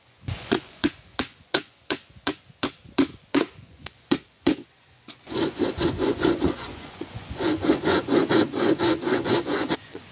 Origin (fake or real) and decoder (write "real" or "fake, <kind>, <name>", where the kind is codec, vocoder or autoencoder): fake, vocoder, Vocos